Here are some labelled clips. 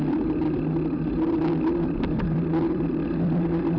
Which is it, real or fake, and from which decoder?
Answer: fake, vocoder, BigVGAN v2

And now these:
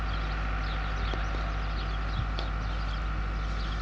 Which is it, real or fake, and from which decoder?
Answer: real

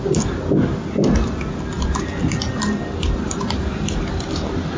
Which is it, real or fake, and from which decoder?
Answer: real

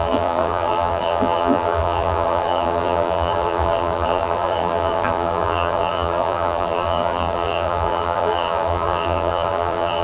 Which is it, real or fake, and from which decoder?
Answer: fake, vocoder, BigVGAN v2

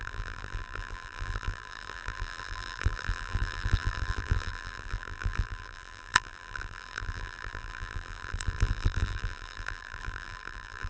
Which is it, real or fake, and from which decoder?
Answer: fake, vocoder, BigVGAN v2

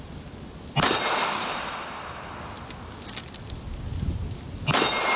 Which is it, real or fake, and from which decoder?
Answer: real